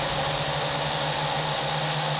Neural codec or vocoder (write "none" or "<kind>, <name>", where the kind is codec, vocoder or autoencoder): none